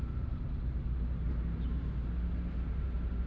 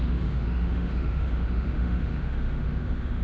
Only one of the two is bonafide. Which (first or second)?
first